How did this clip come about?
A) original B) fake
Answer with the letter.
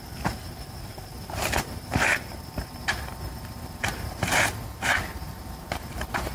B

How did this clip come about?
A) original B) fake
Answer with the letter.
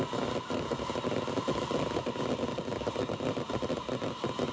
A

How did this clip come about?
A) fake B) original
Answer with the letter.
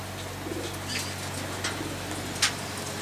B